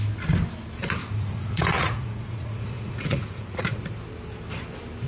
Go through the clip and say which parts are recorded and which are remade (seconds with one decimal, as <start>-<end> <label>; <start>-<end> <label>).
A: 0.0-1.0 recorded; 1.0-3.8 remade; 3.8-5.1 recorded